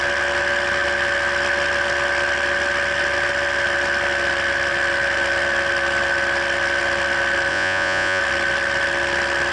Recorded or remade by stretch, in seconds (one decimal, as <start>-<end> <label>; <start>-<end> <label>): 0.0-7.5 recorded; 7.5-8.2 remade; 8.2-9.5 recorded